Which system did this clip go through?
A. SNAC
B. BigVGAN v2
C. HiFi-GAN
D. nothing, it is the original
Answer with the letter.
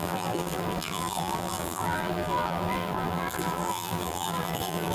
B